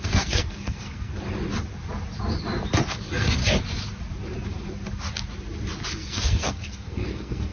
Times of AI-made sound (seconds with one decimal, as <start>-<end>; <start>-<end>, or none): 0.0-1.1; 3.0-3.4; 5.9-7.5